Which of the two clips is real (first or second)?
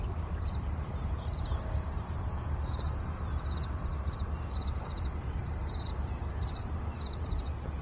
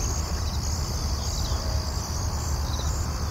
second